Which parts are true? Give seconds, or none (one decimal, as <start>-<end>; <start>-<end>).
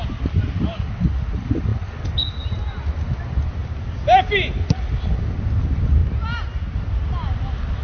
0.0-7.8